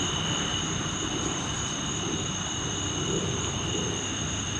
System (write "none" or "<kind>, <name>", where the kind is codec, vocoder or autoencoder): none